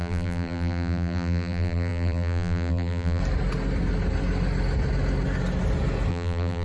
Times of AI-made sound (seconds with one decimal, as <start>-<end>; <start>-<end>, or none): 0.0-3.2; 6.1-6.6